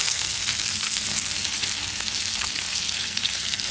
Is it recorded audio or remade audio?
remade